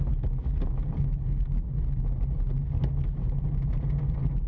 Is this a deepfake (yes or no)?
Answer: no